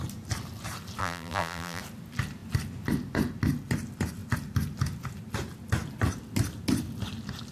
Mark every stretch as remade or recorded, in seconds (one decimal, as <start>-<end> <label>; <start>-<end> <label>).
0.0-1.0 recorded; 1.0-1.8 remade; 1.8-7.5 recorded